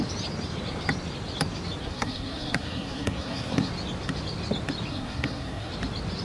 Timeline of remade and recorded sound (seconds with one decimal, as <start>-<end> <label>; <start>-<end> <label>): 0.0-1.8 recorded; 1.8-3.7 remade; 3.7-4.9 recorded; 4.9-5.7 remade; 5.7-6.2 recorded